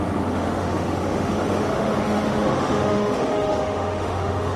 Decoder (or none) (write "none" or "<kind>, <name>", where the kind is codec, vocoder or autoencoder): autoencoder, DAC-VAE